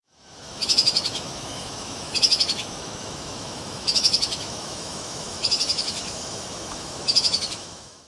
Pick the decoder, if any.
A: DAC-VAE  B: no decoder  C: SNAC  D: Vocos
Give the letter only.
A